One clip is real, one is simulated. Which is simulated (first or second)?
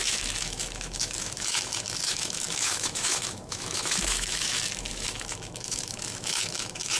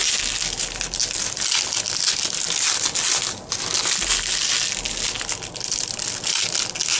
first